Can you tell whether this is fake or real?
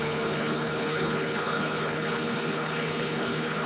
fake